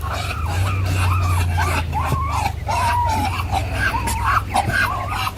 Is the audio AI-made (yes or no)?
no